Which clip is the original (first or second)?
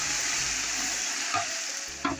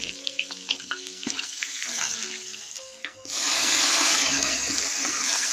first